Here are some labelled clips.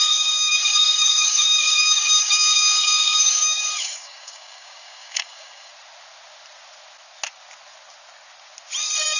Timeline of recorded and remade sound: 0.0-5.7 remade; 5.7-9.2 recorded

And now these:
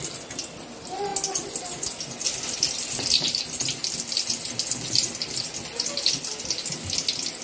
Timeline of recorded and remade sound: 0.0-7.4 recorded

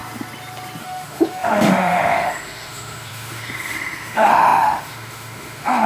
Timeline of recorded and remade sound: 0.0-0.8 recorded; 0.8-5.9 remade

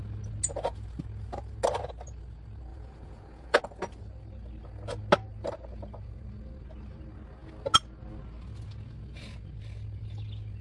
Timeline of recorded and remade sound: 0.0-2.7 recorded; 2.7-3.6 remade; 3.6-10.6 recorded

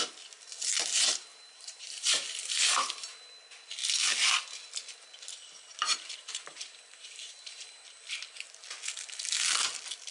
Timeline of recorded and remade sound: 0.0-1.3 recorded; 1.3-2.9 remade; 2.9-5.7 recorded; 5.7-7.6 remade; 7.6-10.1 recorded